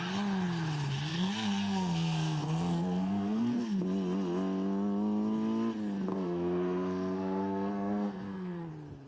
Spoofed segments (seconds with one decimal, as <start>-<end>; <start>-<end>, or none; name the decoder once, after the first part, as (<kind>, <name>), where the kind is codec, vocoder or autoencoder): 1.1-3.8 (codec, SNAC); 6.1-8.7